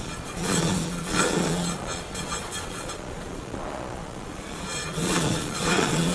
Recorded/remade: remade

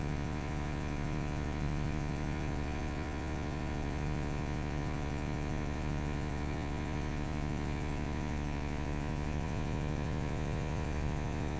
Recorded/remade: remade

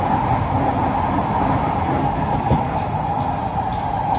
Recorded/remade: recorded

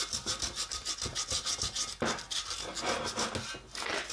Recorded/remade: recorded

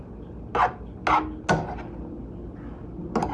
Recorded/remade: recorded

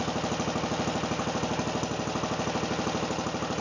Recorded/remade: recorded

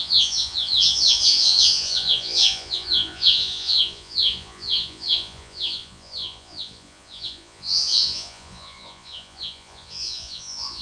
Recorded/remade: remade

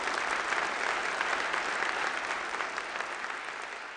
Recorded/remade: recorded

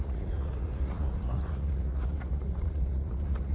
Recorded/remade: remade